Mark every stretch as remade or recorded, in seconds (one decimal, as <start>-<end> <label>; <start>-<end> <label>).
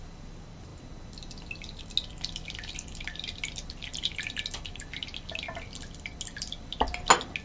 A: 0.0-7.4 recorded